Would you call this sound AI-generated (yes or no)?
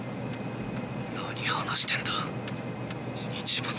no